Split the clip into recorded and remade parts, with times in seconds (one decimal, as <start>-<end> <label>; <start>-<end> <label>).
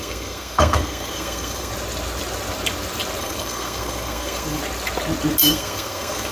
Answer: 0.0-1.7 remade; 1.7-3.2 recorded; 3.2-4.6 remade; 4.6-5.5 recorded; 5.5-6.3 remade